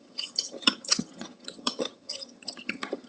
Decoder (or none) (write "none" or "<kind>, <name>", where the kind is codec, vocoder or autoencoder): vocoder, HiFi-GAN